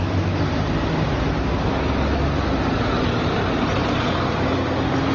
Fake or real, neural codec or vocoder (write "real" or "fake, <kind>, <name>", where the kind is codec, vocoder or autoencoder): real